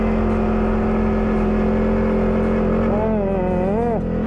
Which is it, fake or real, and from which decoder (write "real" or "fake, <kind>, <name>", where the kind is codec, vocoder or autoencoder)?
real